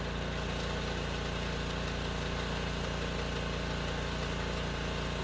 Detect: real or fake real